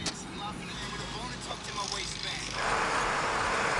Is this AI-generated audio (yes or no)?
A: no